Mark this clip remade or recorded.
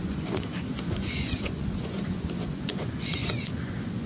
remade